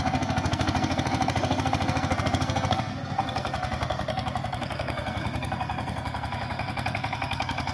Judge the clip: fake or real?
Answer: fake